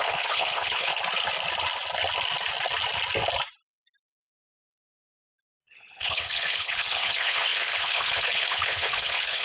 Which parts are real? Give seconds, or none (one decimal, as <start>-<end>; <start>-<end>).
0.9-5.6